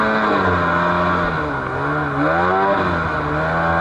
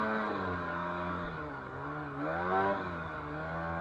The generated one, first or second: second